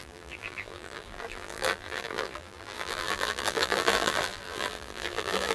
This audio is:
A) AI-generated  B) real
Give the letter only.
A